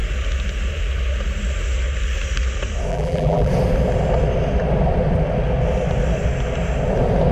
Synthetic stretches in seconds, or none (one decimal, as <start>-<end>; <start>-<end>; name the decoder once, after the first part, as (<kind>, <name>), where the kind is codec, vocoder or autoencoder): 2.9-3.5 (vocoder, BigVGAN v2)